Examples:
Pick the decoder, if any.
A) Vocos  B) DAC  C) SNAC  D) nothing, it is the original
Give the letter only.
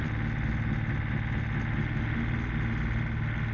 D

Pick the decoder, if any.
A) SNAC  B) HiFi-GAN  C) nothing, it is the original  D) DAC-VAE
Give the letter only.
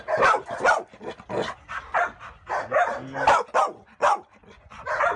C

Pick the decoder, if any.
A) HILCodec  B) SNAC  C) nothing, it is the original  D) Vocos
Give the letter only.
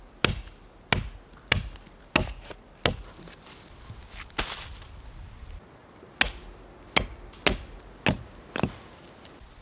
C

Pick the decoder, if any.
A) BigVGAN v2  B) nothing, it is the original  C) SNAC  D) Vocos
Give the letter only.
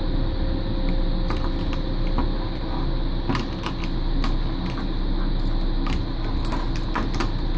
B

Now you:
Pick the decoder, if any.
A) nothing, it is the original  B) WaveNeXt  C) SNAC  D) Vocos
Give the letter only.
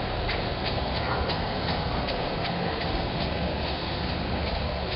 C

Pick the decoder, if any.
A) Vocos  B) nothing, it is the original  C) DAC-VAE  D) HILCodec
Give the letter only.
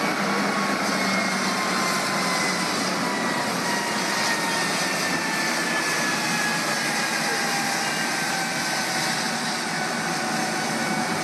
B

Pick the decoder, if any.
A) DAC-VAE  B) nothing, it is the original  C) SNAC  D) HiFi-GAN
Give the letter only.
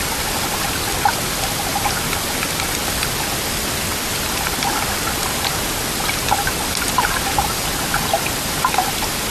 B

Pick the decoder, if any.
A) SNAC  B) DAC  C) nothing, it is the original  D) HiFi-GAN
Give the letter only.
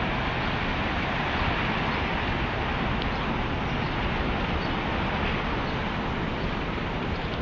C